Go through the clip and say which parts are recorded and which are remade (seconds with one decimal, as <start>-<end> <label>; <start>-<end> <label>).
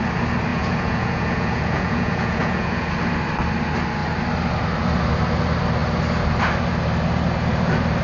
0.0-0.5 recorded; 0.5-2.9 remade; 2.9-8.0 recorded